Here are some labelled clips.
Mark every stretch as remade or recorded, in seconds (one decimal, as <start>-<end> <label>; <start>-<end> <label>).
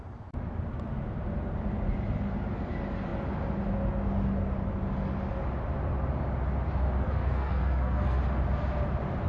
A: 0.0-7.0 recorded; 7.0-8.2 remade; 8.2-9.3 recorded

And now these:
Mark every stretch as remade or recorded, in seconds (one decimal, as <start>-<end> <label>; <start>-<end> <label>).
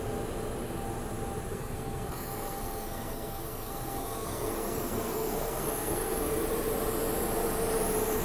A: 0.0-1.5 recorded; 1.5-6.4 remade; 6.4-8.2 recorded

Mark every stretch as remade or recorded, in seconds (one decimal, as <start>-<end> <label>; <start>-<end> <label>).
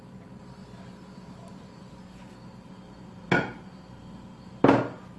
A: 0.0-5.2 recorded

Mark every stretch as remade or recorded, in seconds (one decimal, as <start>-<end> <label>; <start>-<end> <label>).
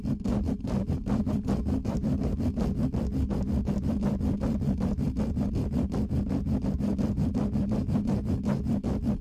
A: 0.0-9.2 recorded